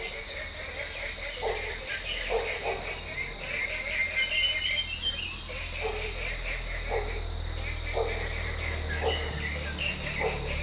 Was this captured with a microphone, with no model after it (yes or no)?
yes